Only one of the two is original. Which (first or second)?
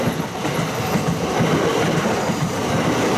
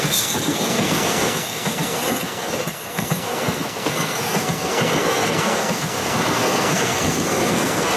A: first